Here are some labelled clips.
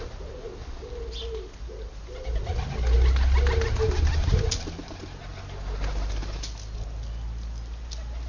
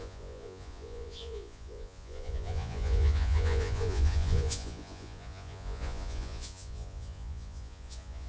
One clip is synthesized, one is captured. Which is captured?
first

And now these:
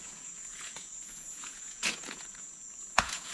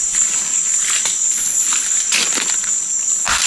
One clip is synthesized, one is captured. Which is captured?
second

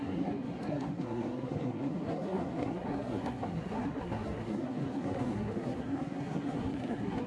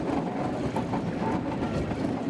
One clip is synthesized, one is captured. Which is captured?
second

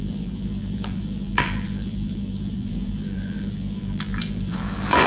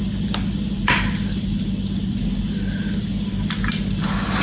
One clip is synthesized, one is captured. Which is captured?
second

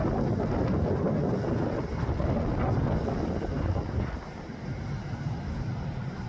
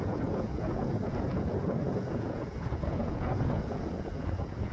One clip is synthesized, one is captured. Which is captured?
first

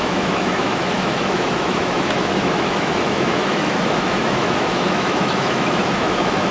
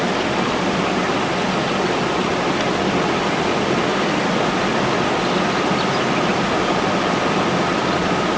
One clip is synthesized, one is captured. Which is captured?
second